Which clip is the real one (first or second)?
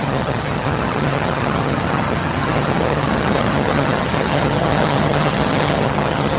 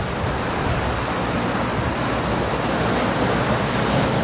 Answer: second